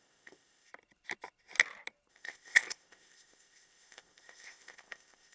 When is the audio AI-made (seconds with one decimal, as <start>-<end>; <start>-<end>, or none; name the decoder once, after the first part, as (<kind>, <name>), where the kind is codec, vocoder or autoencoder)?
0.0-0.7 (codec, ZipCodec); 2.1-5.3